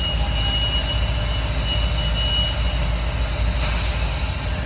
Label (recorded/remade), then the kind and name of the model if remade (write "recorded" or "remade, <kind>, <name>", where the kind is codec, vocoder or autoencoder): recorded